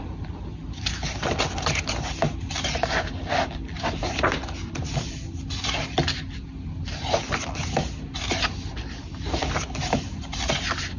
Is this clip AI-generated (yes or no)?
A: no